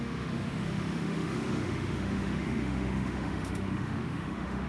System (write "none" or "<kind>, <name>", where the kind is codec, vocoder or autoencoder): autoencoder, DAC-VAE